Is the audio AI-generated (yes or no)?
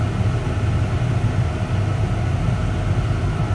no